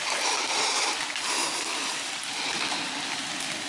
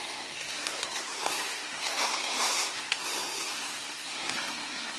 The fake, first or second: second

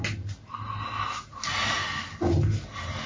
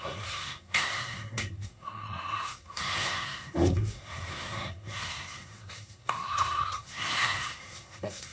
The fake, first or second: second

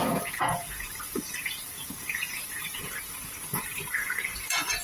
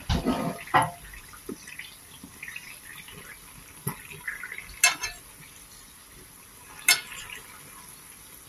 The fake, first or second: first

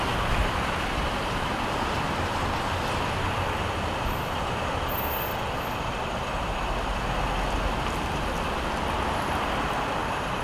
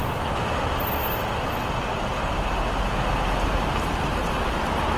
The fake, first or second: first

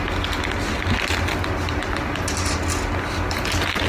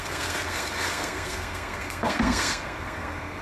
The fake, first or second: second